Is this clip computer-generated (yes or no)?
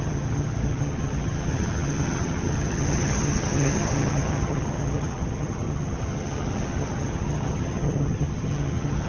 yes